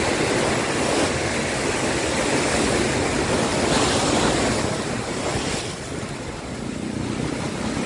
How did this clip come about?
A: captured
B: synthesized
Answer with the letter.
A